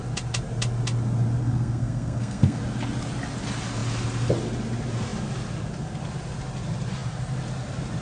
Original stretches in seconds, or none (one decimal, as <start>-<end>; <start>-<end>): 0.0-1.4; 2.6-8.0